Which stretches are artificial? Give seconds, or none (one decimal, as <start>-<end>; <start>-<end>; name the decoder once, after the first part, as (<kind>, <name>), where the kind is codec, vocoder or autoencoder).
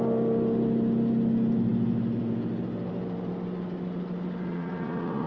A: 4.5-5.3 (vocoder, Vocos)